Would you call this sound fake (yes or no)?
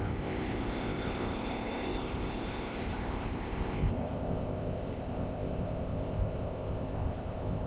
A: yes